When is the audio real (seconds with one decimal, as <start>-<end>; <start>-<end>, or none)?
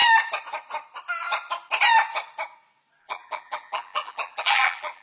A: 0.0-3.0